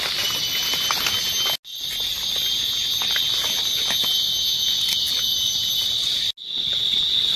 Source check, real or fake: real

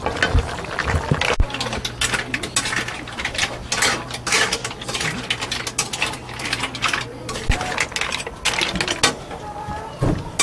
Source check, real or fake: real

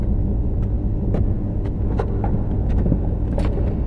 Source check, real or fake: real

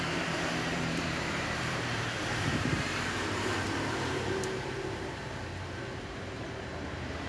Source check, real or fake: fake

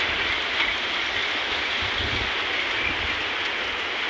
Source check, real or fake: real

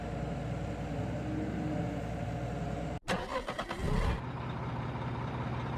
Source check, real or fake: real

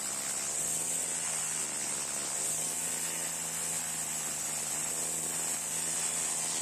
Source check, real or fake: real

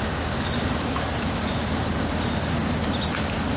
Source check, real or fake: real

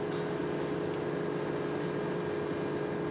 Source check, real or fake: real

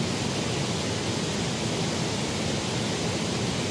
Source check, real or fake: real